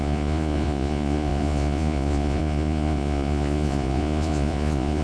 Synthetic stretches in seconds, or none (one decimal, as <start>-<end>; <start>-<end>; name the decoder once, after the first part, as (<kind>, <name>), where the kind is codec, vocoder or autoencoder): 0.0-5.0 (vocoder, Vocos)